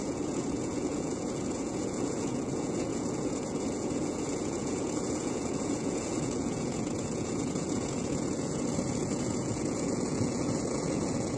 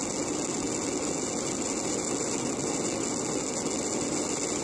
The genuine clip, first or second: second